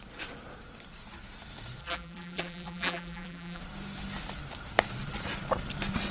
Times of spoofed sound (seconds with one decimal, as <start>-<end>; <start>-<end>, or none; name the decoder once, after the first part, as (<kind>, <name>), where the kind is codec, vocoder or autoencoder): 1.8-3.6 (vocoder, BigVGAN v2)